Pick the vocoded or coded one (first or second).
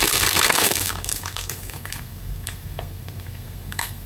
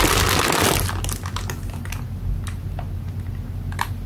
first